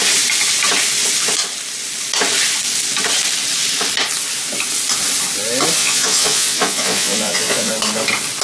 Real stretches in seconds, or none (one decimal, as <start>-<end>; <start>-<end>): 0.0-5.8; 7.7-8.4